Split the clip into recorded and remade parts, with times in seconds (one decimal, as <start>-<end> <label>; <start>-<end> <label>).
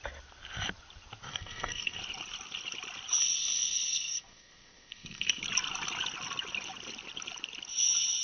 0.0-1.3 recorded; 1.3-2.0 remade; 2.0-3.2 recorded; 3.2-5.4 remade; 5.4-8.2 recorded